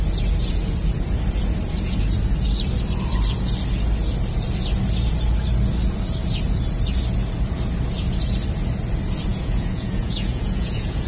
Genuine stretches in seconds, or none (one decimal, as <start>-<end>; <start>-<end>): 0.0-9.3